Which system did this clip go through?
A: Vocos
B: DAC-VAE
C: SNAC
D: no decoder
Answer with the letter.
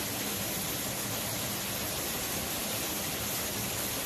D